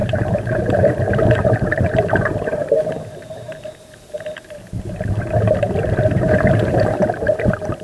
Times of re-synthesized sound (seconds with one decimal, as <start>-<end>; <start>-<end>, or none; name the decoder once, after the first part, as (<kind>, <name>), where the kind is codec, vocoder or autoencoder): 0.0-2.6 (vocoder, BigVGAN v2); 6.0-7.8